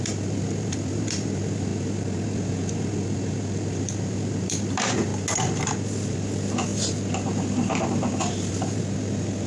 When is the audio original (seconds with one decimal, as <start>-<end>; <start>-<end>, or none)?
1.7-3.8; 5.1-6.1